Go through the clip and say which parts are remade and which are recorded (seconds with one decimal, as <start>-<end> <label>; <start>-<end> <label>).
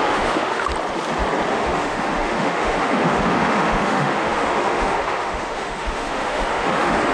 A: 0.0-0.7 remade; 0.7-1.5 recorded; 1.5-7.1 remade